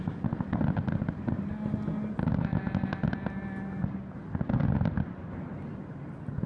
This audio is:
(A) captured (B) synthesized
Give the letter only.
A